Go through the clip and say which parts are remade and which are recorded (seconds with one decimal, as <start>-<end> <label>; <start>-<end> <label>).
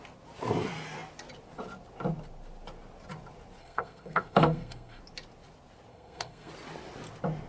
0.0-3.6 recorded; 3.6-5.0 remade; 5.0-5.9 recorded; 5.9-6.5 remade; 6.5-7.5 recorded